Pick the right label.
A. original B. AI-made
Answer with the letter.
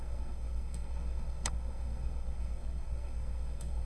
B